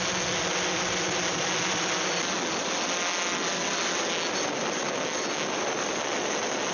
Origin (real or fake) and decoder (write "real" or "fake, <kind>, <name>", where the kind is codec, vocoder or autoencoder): real